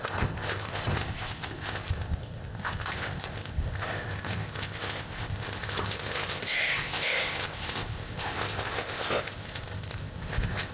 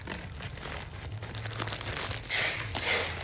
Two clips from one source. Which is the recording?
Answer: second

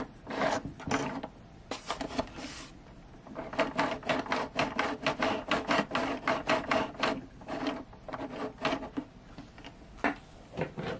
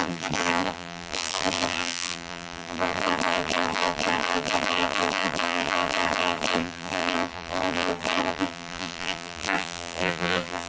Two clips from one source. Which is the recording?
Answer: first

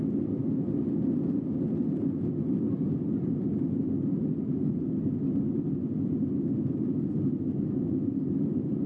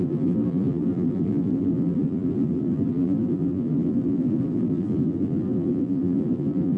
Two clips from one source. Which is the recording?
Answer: first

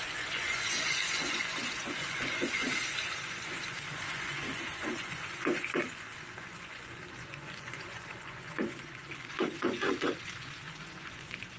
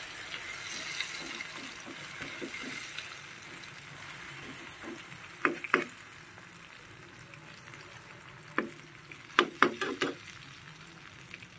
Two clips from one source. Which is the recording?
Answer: second